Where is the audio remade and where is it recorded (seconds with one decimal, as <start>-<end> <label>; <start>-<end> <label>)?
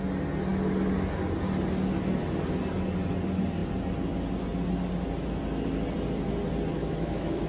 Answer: 0.0-6.8 recorded; 6.8-7.5 remade